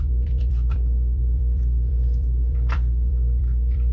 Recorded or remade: remade